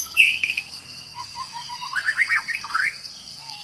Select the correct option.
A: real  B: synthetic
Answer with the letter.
B